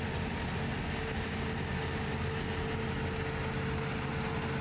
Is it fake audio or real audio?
real